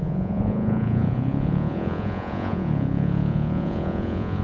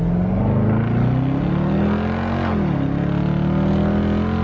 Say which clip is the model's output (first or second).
first